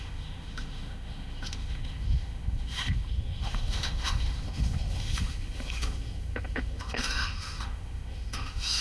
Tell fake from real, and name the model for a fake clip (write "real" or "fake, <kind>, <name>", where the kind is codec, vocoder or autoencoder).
fake, autoencoder, DAC-VAE